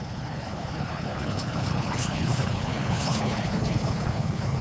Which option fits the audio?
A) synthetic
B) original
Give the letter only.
A